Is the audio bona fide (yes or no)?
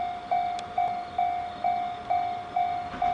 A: yes